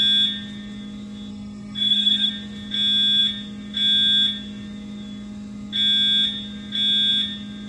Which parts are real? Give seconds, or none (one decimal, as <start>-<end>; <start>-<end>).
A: 0.0-1.3; 2.3-7.7